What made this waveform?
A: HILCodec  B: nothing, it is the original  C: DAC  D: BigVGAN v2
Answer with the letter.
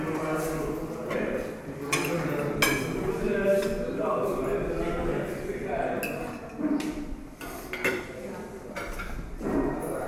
B